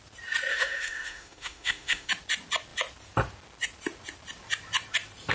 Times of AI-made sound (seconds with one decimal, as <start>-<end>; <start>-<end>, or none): 0.5-2.1